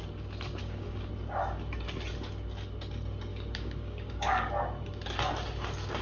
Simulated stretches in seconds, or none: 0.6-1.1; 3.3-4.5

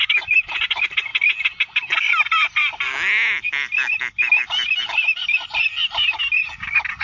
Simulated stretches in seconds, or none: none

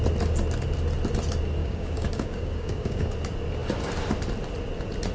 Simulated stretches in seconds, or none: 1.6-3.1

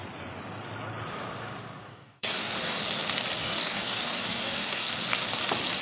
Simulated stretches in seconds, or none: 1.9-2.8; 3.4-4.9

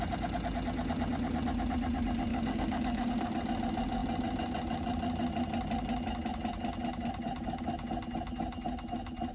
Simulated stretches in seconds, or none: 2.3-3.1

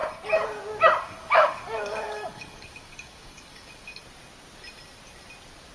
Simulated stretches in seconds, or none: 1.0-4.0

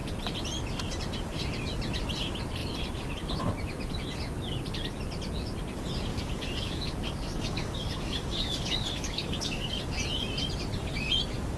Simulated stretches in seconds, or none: 6.1-9.8